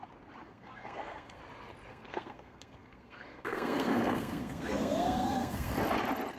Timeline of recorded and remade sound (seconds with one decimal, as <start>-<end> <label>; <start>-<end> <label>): 0.0-0.4 recorded; 0.4-1.4 remade; 1.4-1.9 recorded; 1.9-5.7 remade; 5.7-6.4 recorded